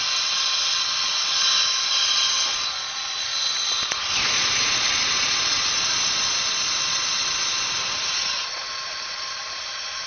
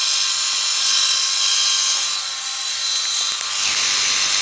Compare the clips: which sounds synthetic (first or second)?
first